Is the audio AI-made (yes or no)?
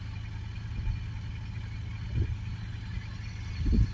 no